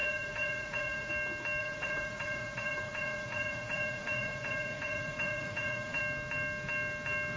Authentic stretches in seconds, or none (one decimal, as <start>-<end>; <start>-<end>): 1.1-1.6; 6.0-7.4